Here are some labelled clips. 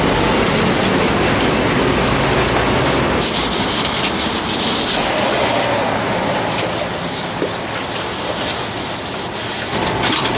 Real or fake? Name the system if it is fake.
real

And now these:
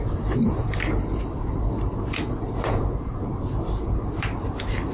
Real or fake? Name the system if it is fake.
fake, vocoder, BigVGAN v2